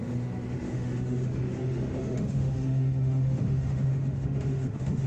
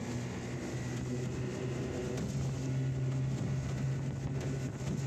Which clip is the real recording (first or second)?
second